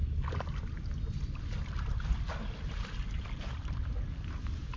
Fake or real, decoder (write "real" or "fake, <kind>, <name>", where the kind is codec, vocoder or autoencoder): real